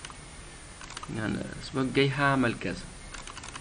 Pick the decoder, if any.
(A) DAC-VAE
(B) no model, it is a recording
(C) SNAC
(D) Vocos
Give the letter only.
B